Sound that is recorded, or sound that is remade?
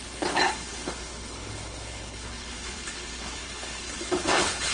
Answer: remade